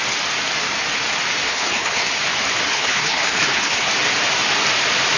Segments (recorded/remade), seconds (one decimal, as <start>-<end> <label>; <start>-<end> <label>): 0.0-1.5 recorded; 1.5-2.1 remade; 2.1-2.7 recorded; 2.7-3.9 remade; 3.9-5.2 recorded